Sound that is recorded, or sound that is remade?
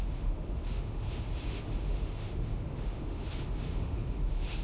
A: remade